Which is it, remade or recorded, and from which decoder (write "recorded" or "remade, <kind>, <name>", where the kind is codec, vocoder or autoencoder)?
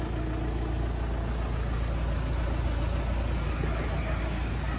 recorded